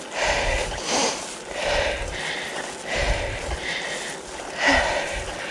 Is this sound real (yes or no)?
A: yes